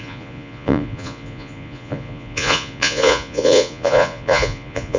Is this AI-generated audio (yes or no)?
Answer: yes